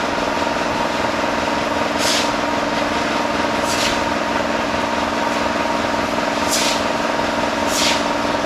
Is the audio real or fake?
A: real